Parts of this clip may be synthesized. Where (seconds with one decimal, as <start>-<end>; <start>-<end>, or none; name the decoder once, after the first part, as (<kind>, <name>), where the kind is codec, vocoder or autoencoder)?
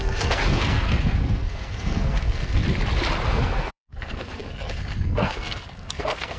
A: 0.0-2.6 (codec, SNAC); 3.3-6.4